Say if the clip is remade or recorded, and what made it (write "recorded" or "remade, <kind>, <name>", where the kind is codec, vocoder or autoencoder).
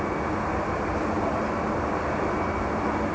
recorded